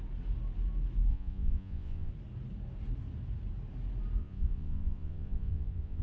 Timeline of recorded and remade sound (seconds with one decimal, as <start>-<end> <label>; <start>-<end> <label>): 0.0-1.1 recorded; 1.1-2.1 remade; 2.1-4.2 recorded; 4.2-6.0 remade